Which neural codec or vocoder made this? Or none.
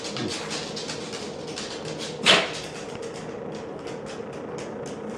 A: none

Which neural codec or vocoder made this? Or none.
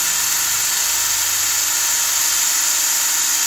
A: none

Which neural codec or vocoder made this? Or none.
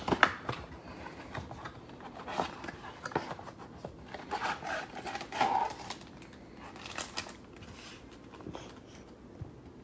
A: none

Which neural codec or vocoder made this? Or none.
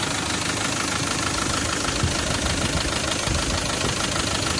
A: none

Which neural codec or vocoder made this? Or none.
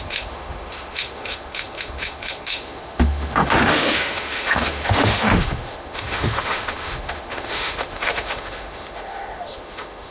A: autoencoder, DAC-VAE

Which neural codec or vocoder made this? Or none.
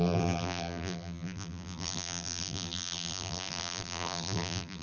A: vocoder, BigVGAN v2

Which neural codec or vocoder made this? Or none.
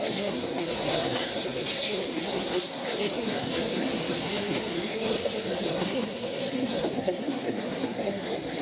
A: codec, SNAC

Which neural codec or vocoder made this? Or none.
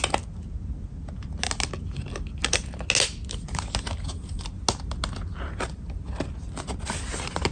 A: none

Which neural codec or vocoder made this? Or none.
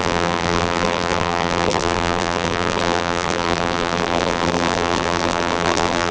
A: vocoder, BigVGAN v2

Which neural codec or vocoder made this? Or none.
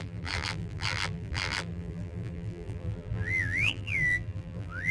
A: vocoder, BigVGAN v2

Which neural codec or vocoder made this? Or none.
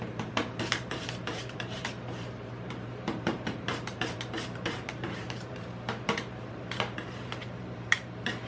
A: vocoder, BigVGAN v2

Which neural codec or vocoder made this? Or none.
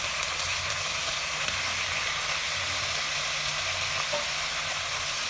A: none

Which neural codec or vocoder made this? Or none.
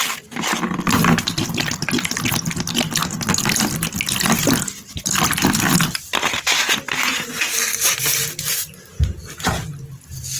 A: none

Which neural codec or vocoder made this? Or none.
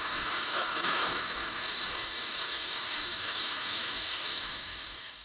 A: codec, DAC